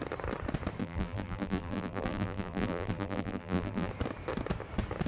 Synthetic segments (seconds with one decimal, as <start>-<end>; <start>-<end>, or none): 0.8-3.9